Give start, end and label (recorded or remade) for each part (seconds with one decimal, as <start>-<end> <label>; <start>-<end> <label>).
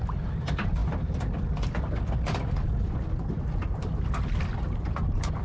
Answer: 0.0-5.4 recorded